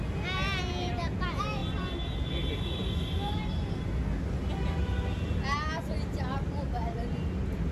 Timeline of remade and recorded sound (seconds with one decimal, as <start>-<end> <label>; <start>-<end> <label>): 0.0-7.7 recorded